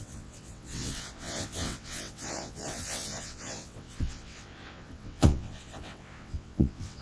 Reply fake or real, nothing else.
fake